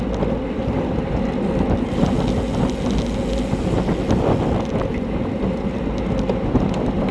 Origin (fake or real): real